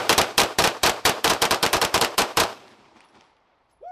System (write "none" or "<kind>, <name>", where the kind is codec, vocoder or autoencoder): vocoder, BigVGAN v2